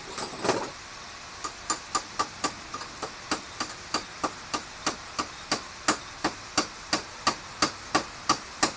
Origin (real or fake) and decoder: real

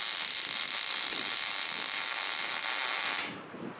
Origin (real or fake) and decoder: real